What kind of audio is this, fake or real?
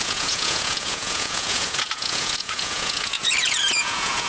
fake